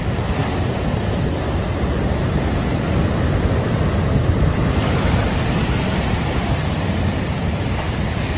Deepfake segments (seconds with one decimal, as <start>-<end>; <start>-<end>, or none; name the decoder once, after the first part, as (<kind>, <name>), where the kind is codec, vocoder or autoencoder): none